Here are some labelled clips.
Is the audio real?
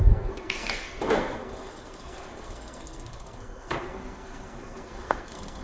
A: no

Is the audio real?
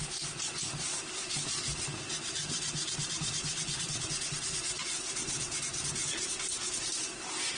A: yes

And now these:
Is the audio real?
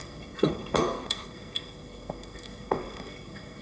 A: no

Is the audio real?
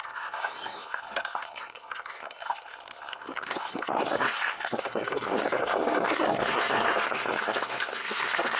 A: no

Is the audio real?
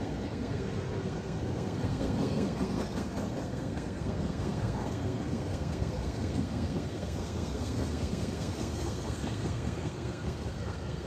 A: no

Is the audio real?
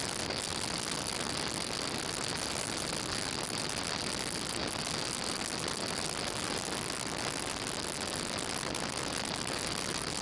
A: yes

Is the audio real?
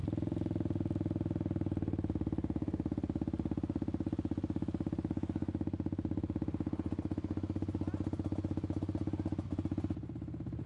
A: yes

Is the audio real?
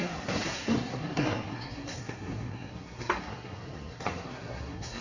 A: no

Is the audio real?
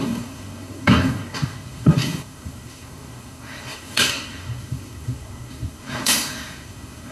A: no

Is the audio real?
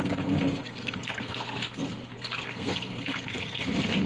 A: no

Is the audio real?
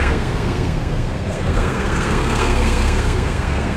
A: no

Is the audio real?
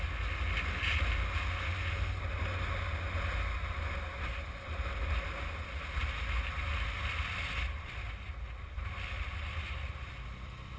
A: yes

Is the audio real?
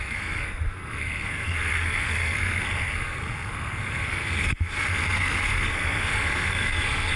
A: no